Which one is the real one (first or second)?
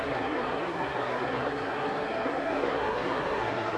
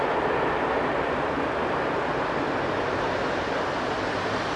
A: second